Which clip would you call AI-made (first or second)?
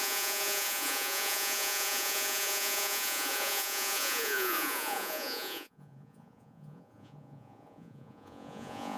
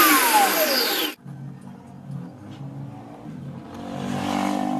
first